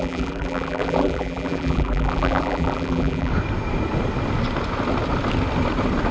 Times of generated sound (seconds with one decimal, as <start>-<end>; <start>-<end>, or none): 0.0-3.3